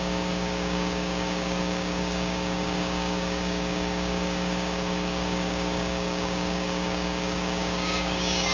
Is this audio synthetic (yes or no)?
yes